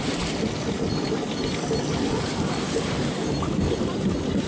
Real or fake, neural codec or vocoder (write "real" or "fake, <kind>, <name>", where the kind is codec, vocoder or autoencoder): real